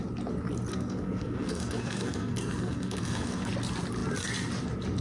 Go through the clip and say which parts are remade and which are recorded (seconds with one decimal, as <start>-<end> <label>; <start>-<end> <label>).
0.0-0.7 recorded; 0.7-3.5 remade; 3.5-5.0 recorded